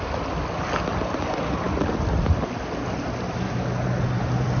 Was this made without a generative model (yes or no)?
yes